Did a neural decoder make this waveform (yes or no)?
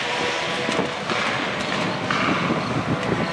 no